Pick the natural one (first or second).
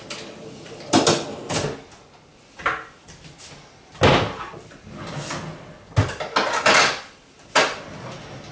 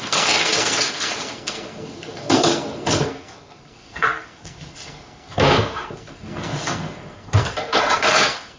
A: first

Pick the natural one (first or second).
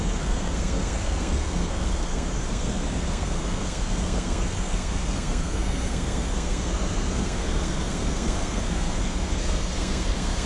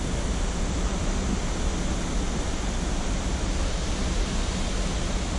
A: second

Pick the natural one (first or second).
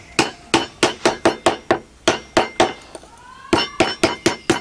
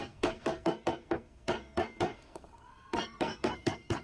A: first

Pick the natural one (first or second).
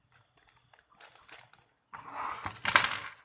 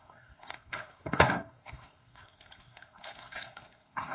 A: first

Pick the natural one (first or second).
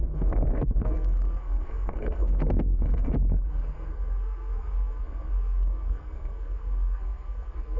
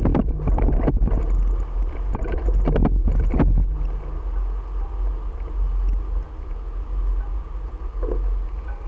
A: second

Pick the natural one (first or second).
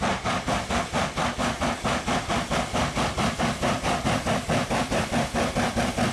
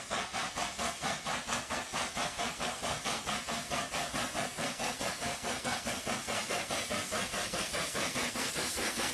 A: first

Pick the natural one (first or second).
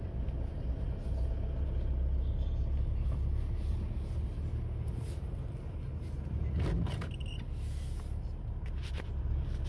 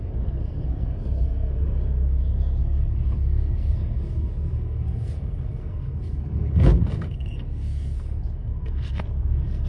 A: first